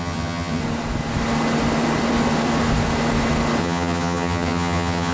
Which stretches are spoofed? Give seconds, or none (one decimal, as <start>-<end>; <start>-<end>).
0.0-0.6; 3.6-5.1